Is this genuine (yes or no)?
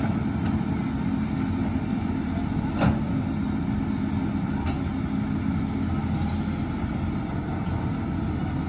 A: yes